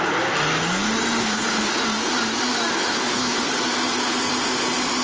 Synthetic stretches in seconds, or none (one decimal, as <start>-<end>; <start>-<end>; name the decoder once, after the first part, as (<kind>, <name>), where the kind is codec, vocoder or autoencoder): 1.2-1.7 (codec, HILCodec); 2.7-3.5